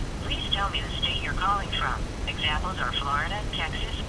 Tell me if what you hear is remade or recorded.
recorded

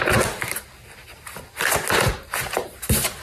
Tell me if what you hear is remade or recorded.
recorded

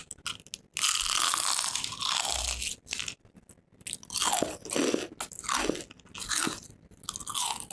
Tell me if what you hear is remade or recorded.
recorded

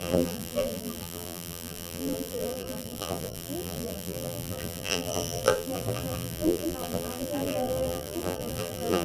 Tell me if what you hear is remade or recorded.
remade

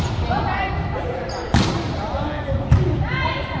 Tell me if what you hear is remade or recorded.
recorded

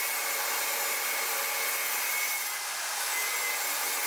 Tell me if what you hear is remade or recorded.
recorded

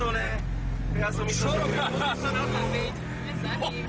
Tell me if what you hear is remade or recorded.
recorded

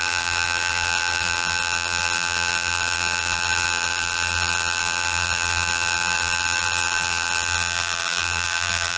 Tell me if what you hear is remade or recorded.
remade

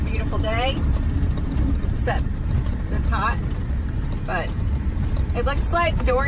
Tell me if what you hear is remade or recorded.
remade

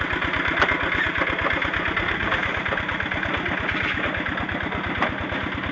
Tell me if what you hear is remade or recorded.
recorded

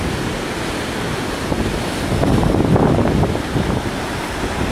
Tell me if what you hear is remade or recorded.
recorded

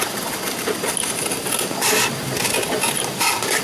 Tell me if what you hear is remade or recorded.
remade